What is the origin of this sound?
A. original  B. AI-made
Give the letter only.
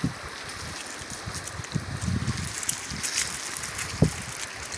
A